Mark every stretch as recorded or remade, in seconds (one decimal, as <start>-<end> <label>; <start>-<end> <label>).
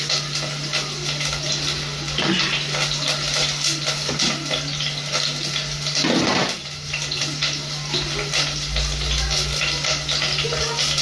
0.0-11.0 recorded